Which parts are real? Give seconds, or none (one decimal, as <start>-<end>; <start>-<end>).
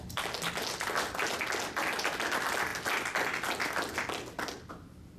0.0-5.2